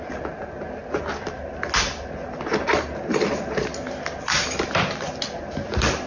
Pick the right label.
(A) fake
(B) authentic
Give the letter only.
B